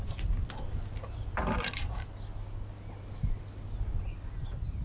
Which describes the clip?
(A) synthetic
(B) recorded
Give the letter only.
B